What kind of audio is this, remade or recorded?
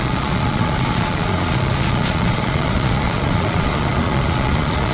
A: remade